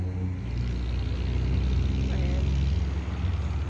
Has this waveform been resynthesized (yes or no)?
no